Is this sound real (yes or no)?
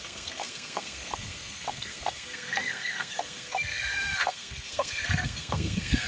no